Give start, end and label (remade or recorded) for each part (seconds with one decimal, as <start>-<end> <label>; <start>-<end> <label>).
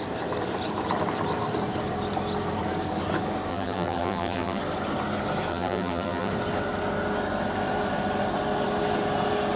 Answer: 0.0-3.5 recorded; 3.5-4.6 remade; 4.6-5.5 recorded; 5.5-6.3 remade; 6.3-9.6 recorded